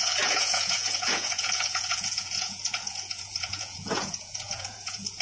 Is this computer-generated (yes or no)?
yes